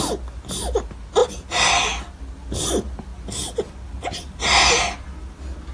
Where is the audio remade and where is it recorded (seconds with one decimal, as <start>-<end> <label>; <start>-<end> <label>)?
0.0-3.1 recorded; 3.1-3.7 remade; 3.7-5.7 recorded